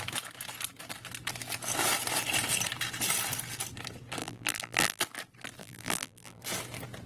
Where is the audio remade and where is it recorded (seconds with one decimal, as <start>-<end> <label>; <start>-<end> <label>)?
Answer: 0.0-4.2 recorded; 4.2-5.0 remade; 5.0-5.6 recorded; 5.6-6.4 remade; 6.4-7.1 recorded